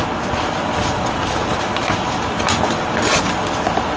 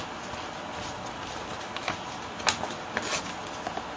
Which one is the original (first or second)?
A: second